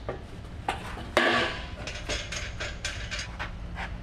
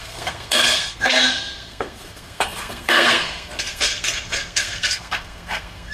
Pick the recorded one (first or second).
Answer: first